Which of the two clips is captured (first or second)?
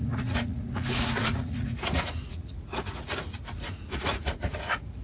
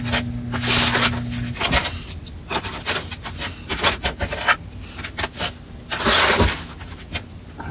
second